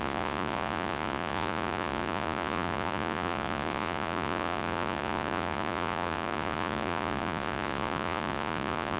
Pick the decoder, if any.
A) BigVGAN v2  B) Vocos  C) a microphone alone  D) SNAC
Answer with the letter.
B